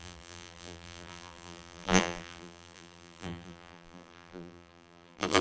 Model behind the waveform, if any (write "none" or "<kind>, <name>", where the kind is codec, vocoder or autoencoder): vocoder, BigVGAN v2